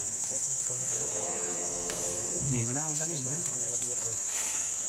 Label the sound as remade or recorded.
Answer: remade